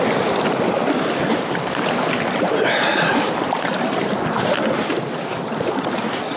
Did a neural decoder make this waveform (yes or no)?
no